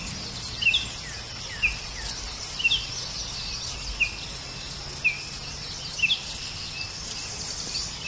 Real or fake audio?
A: real